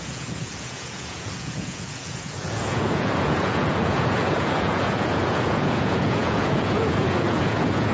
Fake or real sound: fake